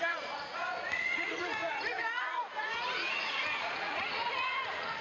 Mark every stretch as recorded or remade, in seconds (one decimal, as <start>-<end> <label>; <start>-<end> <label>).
0.0-5.0 remade